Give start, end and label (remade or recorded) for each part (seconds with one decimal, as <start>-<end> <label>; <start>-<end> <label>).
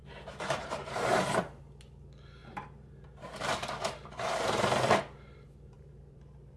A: 0.0-1.6 remade; 1.6-2.4 recorded; 2.4-6.6 remade